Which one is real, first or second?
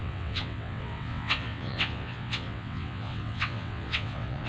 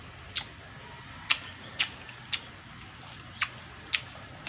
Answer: second